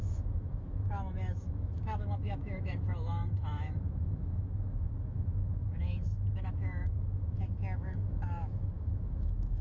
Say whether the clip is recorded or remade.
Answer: remade